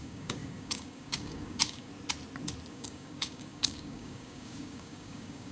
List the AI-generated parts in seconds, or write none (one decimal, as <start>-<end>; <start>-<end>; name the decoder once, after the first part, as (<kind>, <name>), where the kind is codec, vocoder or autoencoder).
0.0-1.9 (codec, DAC); 2.7-5.5